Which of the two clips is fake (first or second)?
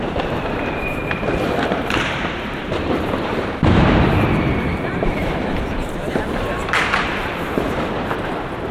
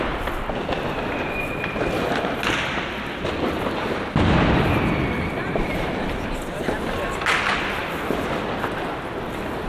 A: first